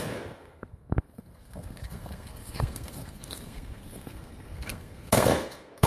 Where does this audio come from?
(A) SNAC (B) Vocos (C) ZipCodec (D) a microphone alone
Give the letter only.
A